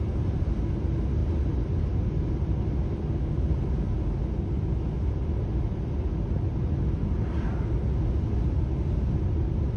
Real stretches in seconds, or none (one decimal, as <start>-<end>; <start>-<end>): 0.0-9.8